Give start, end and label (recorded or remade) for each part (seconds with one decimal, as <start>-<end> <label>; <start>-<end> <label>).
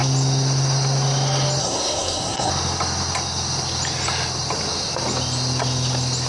0.0-1.6 recorded; 1.6-2.5 remade; 2.5-6.3 recorded